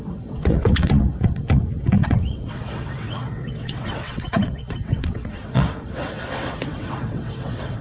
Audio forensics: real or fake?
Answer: fake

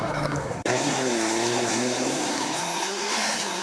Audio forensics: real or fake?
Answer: fake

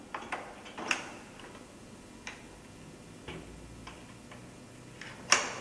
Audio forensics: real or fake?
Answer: real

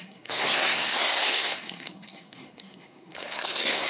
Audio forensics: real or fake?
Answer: fake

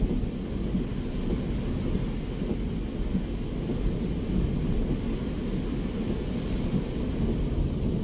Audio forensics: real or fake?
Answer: real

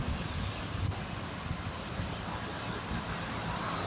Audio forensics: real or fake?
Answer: real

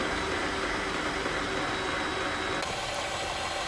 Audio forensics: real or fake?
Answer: real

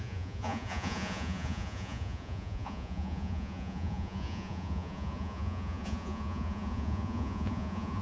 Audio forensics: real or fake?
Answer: fake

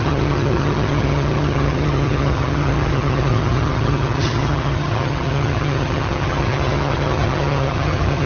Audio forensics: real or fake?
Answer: fake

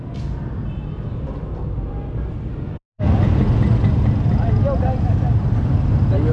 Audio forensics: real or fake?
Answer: real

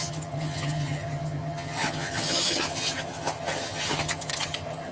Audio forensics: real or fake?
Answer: fake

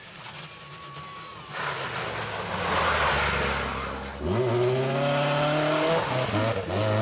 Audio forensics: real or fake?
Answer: real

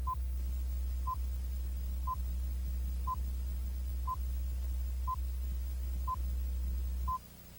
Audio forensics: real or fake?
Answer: real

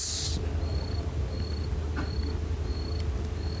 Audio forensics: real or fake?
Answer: real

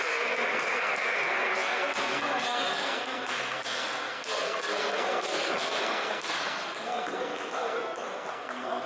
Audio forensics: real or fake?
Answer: fake